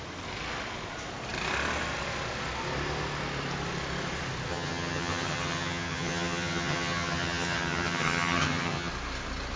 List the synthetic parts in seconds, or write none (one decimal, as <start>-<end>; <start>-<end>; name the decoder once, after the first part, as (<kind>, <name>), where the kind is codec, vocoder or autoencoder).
4.5-8.9 (vocoder, HiFi-GAN)